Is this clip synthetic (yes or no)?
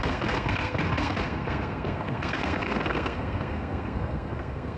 yes